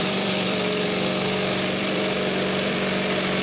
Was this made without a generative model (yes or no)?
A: no